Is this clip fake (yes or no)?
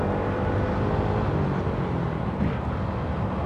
no